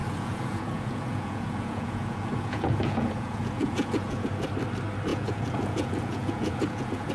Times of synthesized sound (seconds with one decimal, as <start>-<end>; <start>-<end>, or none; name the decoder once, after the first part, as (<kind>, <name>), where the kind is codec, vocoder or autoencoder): 0.0-4.3 (vocoder, Vocos); 5.1-7.1